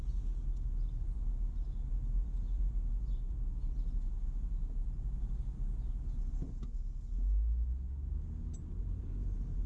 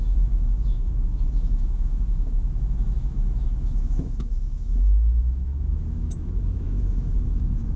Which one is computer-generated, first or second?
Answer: second